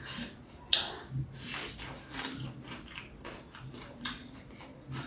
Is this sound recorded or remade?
recorded